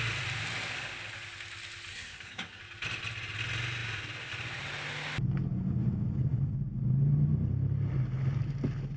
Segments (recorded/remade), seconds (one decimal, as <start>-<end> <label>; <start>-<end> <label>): 0.0-1.9 recorded; 1.9-2.6 remade; 2.6-9.0 recorded